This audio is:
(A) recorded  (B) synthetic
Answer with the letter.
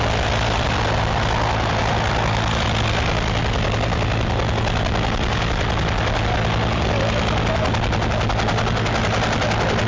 A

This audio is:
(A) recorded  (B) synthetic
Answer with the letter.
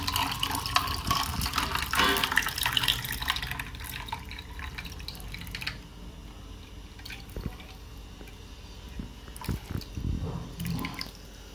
A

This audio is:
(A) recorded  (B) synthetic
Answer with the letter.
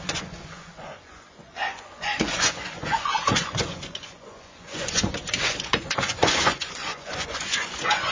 B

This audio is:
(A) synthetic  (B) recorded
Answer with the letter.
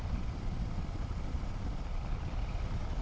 B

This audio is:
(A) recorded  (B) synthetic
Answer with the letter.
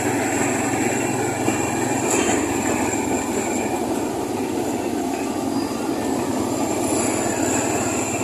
A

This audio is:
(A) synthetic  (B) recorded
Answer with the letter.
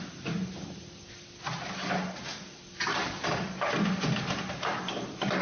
B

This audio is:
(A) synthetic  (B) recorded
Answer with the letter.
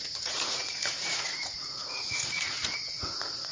A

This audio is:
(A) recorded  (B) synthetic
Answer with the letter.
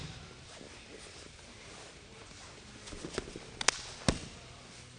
A